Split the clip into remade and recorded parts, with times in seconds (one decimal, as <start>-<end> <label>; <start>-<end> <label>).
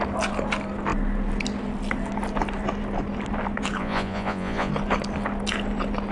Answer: 0.0-3.8 recorded; 3.8-4.7 remade; 4.7-6.1 recorded